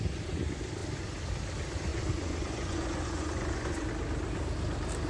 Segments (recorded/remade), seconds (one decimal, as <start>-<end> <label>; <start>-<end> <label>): 0.0-1.9 recorded; 1.9-3.9 remade; 3.9-5.1 recorded